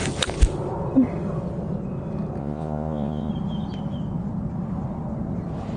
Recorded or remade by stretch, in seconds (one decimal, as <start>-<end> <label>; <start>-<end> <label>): 0.0-2.4 recorded; 2.4-3.3 remade; 3.3-5.8 recorded